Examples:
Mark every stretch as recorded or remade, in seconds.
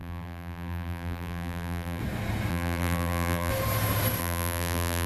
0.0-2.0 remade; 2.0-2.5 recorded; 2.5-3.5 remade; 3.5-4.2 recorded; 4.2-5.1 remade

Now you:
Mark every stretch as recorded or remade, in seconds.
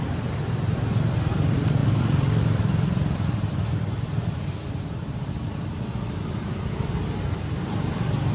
0.0-8.3 remade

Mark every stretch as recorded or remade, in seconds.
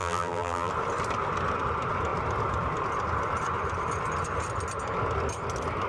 0.0-0.7 remade; 0.7-5.9 recorded